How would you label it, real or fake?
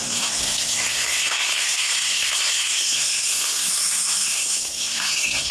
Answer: fake